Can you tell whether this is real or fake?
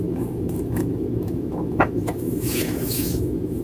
fake